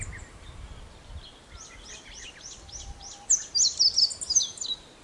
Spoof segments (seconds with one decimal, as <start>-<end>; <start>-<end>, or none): none